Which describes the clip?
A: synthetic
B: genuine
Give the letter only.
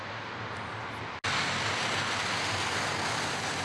B